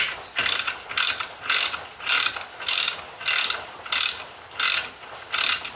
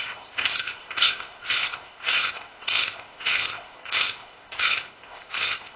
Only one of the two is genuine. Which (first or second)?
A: first